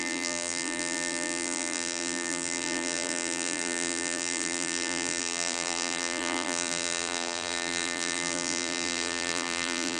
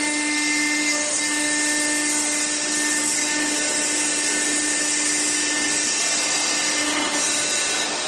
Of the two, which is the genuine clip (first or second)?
second